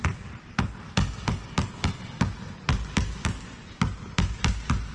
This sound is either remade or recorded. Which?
recorded